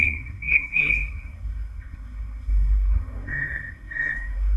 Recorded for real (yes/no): no